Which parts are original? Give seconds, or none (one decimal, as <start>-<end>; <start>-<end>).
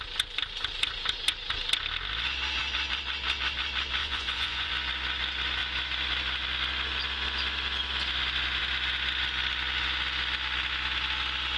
0.0-4.0; 4.7-11.6